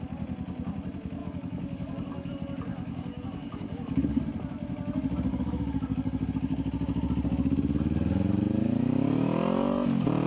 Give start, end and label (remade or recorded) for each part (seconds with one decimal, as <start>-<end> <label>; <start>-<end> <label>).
0.0-1.2 recorded; 1.2-2.3 remade; 2.3-2.7 recorded; 2.7-4.2 remade; 4.2-5.3 recorded; 5.3-6.3 remade; 6.3-10.3 recorded